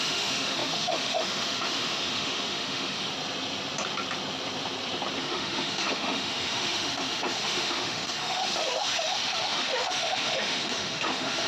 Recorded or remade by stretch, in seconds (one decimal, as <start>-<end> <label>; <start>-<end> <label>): 0.0-3.1 remade; 3.1-5.2 recorded; 5.2-11.5 remade